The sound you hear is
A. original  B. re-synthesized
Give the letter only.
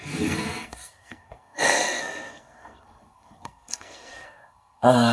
B